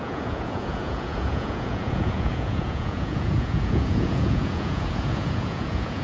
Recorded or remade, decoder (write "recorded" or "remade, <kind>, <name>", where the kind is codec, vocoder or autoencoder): remade, vocoder, Vocos